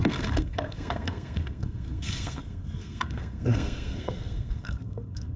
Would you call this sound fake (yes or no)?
yes